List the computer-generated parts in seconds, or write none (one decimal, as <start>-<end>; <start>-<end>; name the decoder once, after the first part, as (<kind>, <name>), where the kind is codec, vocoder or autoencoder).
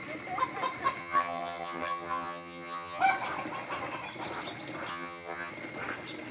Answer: 1.0-3.0 (vocoder, HiFi-GAN); 4.9-5.5